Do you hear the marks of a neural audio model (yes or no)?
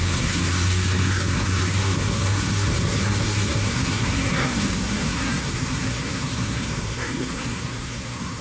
yes